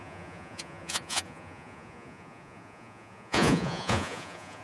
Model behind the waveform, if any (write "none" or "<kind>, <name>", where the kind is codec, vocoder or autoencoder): vocoder, Vocos